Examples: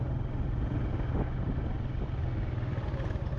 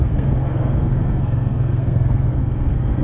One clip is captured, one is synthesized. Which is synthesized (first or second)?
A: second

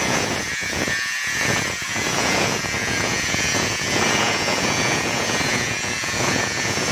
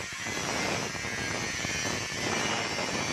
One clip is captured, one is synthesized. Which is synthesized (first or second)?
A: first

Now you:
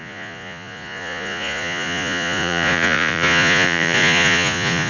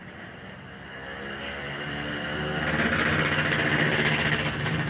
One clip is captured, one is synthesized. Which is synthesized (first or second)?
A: first